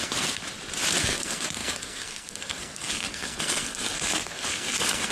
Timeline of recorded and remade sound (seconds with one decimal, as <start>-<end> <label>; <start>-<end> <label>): 0.0-0.4 remade; 0.4-1.0 recorded; 1.0-5.1 remade